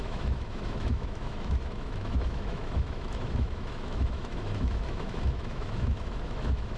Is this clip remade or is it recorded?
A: remade